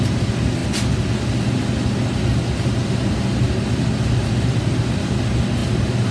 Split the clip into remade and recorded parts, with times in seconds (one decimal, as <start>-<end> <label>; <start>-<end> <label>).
0.0-6.1 recorded